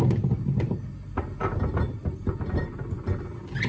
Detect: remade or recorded recorded